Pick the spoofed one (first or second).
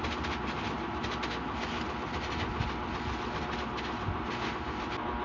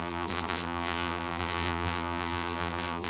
second